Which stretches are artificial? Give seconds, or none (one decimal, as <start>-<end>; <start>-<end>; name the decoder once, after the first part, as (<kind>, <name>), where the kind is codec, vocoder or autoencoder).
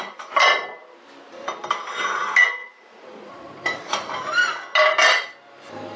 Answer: 2.6-4.1 (vocoder, Vocos)